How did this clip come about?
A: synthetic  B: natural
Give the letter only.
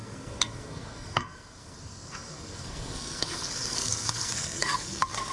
A